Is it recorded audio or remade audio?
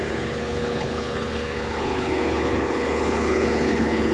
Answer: remade